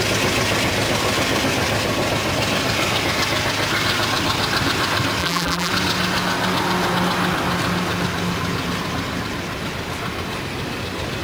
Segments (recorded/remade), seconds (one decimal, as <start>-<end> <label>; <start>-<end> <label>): 0.0-5.2 recorded; 5.2-5.7 remade; 5.7-11.2 recorded